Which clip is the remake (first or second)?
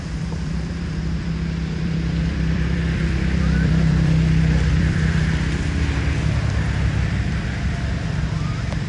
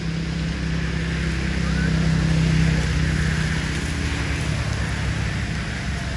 first